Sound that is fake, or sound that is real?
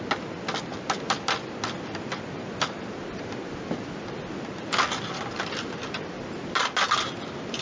real